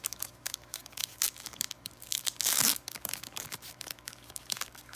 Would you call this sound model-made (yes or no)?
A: yes